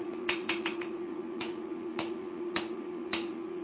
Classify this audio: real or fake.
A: fake